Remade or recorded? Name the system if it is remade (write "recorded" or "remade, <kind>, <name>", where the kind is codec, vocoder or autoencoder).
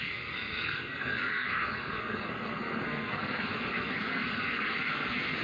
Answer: remade, codec, SNAC